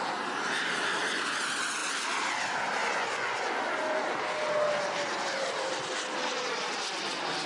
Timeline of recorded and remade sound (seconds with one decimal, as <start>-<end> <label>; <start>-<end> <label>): 0.0-2.8 recorded; 2.8-3.6 remade; 3.6-7.5 recorded